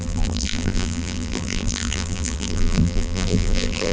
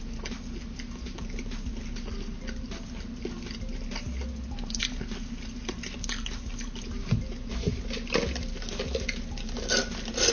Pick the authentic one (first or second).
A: second